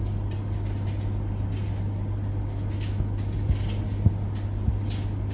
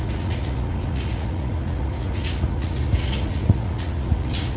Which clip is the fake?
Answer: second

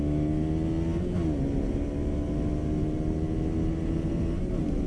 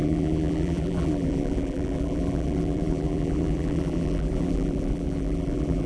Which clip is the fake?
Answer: second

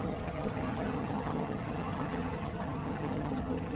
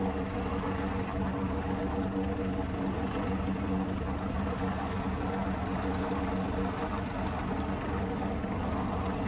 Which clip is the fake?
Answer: first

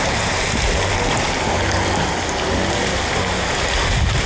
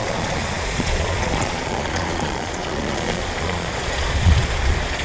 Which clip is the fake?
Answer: second